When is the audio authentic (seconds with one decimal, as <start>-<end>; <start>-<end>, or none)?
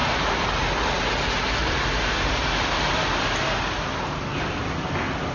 0.0-1.6; 2.1-5.3